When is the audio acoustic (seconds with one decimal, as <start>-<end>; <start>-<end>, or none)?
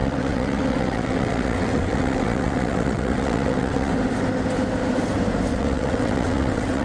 3.9-5.5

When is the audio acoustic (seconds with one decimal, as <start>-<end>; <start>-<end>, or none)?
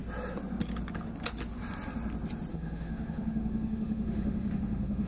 0.0-2.5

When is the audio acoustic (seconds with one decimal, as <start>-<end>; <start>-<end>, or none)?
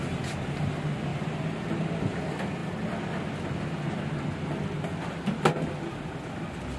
0.0-6.8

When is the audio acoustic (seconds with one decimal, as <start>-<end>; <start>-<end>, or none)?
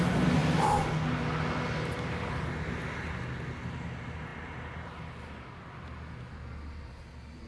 0.0-7.5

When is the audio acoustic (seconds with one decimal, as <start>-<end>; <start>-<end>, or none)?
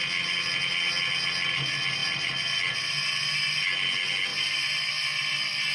0.0-5.7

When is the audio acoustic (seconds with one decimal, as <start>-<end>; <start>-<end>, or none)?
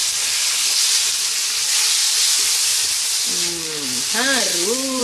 0.8-5.0